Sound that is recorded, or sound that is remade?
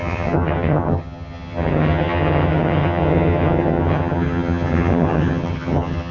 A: remade